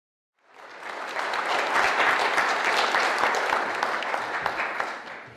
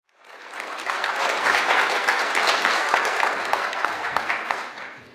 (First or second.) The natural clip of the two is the first